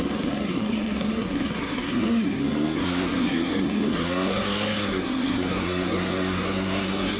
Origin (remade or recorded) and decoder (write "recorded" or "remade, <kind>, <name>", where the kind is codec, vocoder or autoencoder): remade, codec, SNAC